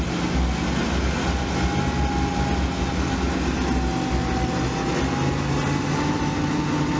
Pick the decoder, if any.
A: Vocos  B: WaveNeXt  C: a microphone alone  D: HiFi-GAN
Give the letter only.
C